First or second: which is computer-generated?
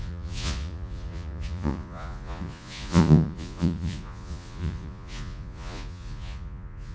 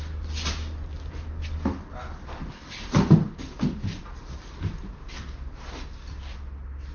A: first